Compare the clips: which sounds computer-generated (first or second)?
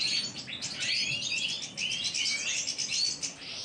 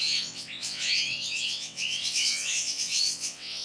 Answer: second